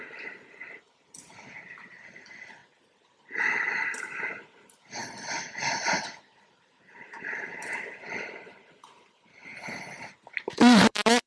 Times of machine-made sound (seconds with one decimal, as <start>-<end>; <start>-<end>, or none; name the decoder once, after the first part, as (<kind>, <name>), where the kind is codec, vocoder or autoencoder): 0.0-2.6 (vocoder, BigVGAN v2); 4.4-5.0; 6.4-11.3